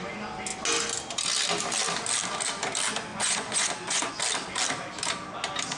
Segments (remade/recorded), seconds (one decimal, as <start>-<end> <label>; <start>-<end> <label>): 0.0-3.1 recorded; 3.1-4.1 remade; 4.1-5.8 recorded